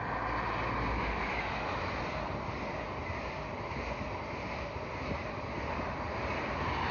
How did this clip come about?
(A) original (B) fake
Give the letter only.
A